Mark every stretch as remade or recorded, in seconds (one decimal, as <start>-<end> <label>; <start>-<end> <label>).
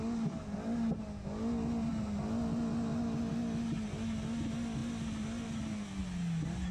0.0-6.7 recorded